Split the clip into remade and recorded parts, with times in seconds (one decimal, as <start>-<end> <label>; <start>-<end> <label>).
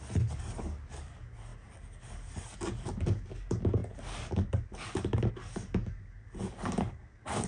0.0-7.5 remade